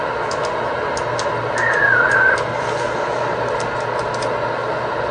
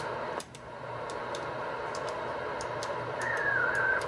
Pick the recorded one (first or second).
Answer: first